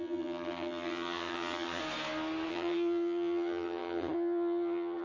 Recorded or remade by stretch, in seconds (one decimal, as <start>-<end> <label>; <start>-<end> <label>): 0.0-1.8 remade; 1.8-2.5 recorded; 2.5-5.0 remade